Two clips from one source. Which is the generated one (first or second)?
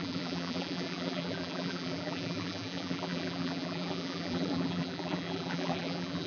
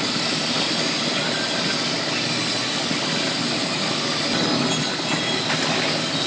first